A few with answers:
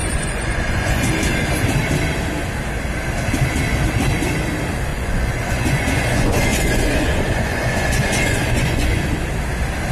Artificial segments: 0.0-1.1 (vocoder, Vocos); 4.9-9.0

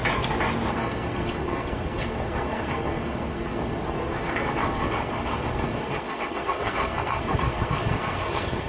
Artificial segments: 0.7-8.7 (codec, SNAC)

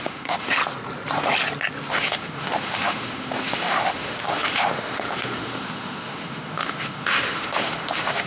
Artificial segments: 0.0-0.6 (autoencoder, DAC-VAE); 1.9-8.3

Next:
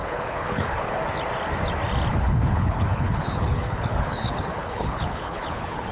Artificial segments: 0.0-1.0 (codec, HILCodec); 2.1-5.9

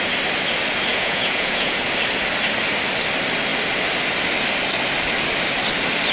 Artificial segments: 0.9-1.8 (vocoder, Vocos)

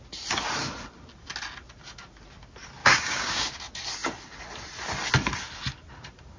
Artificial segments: 2.8-3.5 (codec, DAC)